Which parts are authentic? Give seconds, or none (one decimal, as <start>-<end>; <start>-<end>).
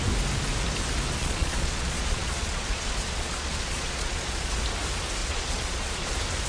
0.0-1.2; 4.6-5.2; 6.1-6.5